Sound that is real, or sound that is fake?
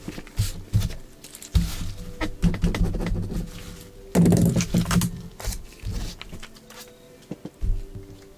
real